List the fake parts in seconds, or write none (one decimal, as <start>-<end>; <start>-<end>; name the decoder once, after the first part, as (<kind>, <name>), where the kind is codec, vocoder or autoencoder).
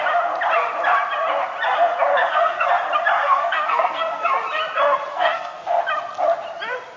2.1-2.7 (codec, SNAC); 3.2-4.3; 5.1-5.8